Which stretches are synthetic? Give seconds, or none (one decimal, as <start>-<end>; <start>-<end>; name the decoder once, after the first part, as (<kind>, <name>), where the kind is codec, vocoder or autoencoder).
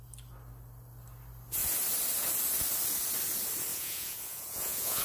3.7-5.0 (vocoder, Vocos)